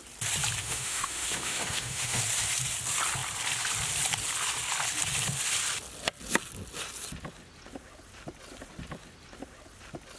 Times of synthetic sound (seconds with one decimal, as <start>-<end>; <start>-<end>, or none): 0.6-2.2